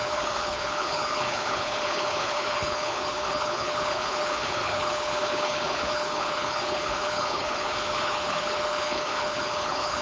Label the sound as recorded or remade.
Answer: remade